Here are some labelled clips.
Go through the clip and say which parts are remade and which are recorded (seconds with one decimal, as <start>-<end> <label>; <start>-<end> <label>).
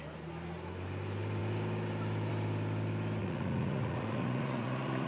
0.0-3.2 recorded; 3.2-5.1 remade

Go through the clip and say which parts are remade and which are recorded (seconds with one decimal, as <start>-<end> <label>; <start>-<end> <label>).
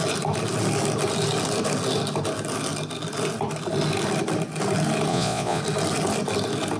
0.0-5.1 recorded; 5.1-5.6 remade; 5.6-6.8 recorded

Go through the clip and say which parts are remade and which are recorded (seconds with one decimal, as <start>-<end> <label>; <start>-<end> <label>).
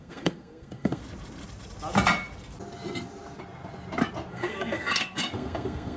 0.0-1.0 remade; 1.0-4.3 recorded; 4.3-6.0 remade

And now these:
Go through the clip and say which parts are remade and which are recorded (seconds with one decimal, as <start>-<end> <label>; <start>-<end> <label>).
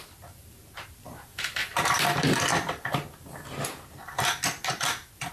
0.0-2.5 remade; 2.5-3.6 recorded; 3.6-4.0 remade; 4.0-5.3 recorded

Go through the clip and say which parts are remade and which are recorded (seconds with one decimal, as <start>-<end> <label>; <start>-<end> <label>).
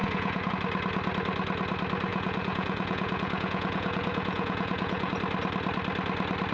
0.0-0.5 remade; 0.5-2.1 recorded; 2.1-5.1 remade; 5.1-6.5 recorded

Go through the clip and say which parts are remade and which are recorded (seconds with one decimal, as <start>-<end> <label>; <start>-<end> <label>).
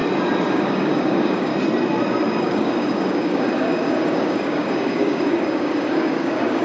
0.0-0.5 recorded; 0.5-1.5 remade; 1.5-2.4 recorded; 2.4-6.6 remade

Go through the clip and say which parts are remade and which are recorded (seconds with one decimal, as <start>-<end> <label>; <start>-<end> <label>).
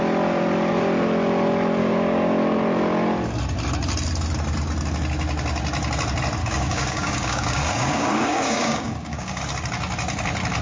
0.0-1.8 recorded; 1.8-2.4 remade; 2.4-6.4 recorded; 6.4-9.4 remade; 9.4-10.6 recorded